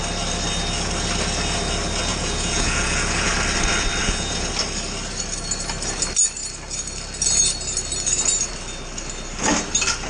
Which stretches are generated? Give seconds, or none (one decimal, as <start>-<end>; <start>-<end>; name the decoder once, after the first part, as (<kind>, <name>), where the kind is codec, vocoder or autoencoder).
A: 2.1-3.3 (vocoder, Vocos); 4.0-4.5